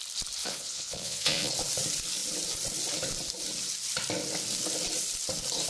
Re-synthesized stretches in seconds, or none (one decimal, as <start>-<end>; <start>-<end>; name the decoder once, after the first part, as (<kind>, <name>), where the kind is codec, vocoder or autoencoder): 0.4-1.5 (vocoder, Vocos)